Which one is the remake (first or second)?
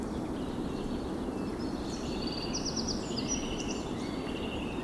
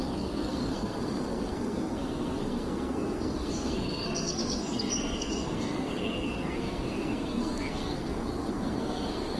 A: second